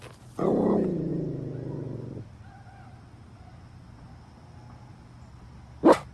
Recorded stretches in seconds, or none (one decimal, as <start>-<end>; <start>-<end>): 0.0-6.1